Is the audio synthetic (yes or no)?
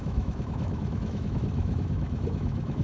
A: yes